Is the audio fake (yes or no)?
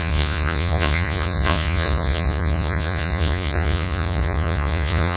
yes